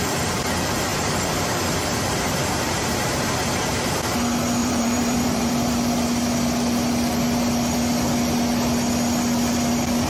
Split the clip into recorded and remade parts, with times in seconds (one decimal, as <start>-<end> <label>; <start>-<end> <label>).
0.0-0.9 recorded; 0.9-3.9 remade; 3.9-4.6 recorded; 4.6-5.5 remade; 5.5-10.1 recorded

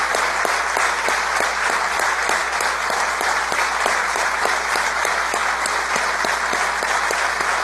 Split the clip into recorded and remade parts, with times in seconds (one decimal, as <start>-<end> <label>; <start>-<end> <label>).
0.0-2.4 recorded; 2.4-4.4 remade; 4.4-7.6 recorded

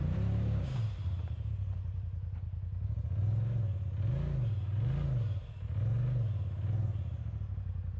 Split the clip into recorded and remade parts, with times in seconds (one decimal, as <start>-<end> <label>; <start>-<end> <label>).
0.0-1.5 remade; 1.5-8.0 recorded